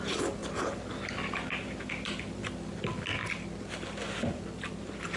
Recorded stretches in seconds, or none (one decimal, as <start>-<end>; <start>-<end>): 0.0-5.2